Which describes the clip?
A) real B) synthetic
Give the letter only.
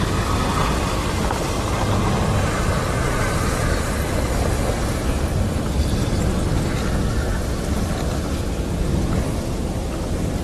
A